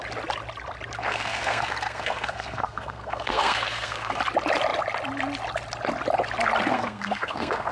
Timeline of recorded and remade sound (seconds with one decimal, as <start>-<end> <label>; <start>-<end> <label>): 0.0-1.0 recorded; 1.0-4.2 remade; 4.2-6.7 recorded; 6.7-7.7 remade